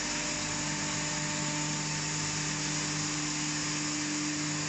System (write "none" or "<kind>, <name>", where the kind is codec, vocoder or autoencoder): none